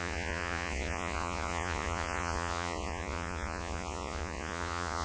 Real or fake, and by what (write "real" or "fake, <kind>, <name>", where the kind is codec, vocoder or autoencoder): fake, vocoder, Vocos